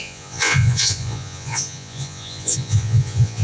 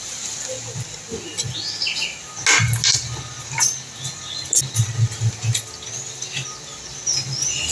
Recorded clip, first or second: second